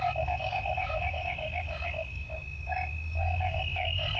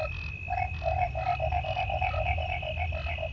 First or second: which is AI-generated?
first